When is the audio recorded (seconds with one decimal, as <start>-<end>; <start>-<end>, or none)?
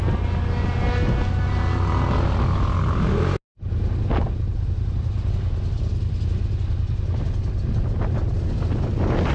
0.0-9.3